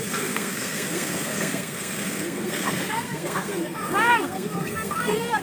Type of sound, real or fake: fake